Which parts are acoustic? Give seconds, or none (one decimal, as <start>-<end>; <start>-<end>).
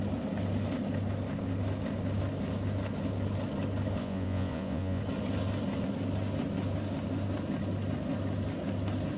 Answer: 0.0-4.0; 5.0-9.2